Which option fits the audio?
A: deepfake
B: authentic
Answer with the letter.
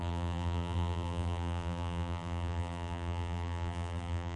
A